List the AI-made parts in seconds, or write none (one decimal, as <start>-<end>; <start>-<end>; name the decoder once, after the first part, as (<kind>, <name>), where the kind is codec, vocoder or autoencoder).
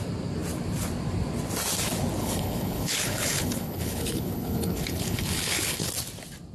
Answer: 2.2-5.9 (codec, HILCodec)